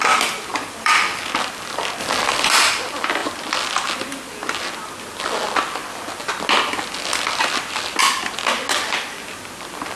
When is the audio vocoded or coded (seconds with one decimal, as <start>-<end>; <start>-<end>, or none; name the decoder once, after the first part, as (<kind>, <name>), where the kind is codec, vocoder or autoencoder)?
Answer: 0.5-1.2 (vocoder, BigVGAN v2); 2.0-2.5